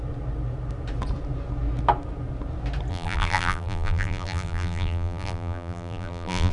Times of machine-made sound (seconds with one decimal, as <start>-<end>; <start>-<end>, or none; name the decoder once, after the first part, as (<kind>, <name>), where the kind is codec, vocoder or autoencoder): 2.9-6.5 (vocoder, BigVGAN v2)